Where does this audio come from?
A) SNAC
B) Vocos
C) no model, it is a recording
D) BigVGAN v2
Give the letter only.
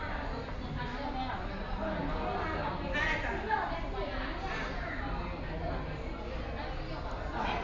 C